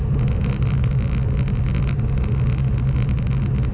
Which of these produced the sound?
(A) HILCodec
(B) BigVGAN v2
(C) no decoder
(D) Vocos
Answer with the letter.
C